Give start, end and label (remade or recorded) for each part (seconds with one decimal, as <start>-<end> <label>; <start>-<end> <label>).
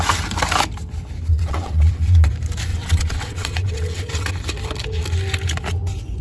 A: 0.0-1.3 recorded; 1.3-2.3 remade; 2.3-2.7 recorded; 2.7-4.3 remade; 4.3-6.2 recorded